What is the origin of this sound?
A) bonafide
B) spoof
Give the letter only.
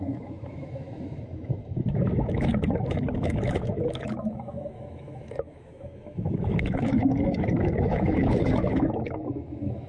B